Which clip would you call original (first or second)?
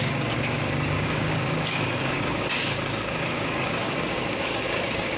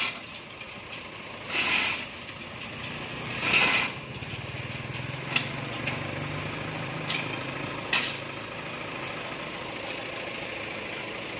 second